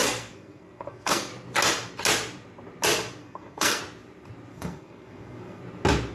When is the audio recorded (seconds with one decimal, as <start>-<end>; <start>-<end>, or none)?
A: 1.3-3.2; 3.8-4.5; 5.6-6.1